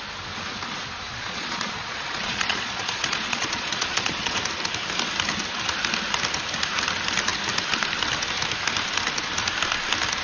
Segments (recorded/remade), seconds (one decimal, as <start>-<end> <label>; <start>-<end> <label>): 0.0-1.1 recorded; 1.1-4.4 remade; 4.4-10.2 recorded